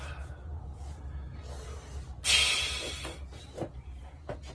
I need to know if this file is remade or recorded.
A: recorded